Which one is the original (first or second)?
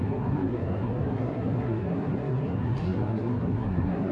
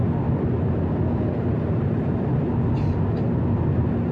second